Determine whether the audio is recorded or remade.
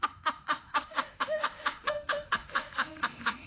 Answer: remade